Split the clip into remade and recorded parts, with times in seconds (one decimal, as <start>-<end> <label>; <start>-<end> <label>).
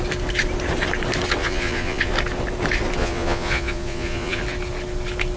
0.0-1.4 recorded; 1.4-2.1 remade; 2.1-3.0 recorded; 3.0-4.4 remade; 4.4-5.4 recorded